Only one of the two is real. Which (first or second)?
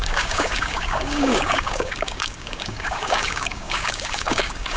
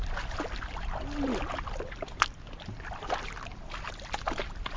second